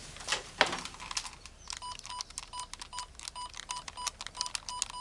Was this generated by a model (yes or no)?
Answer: no